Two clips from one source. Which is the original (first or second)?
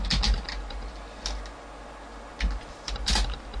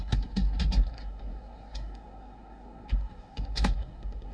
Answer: first